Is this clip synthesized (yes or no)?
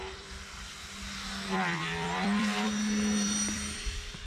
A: yes